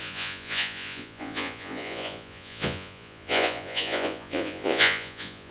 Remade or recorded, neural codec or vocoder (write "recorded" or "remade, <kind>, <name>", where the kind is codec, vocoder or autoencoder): remade, vocoder, Vocos